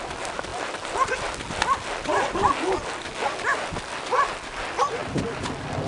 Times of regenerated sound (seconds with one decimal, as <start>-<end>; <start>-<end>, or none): none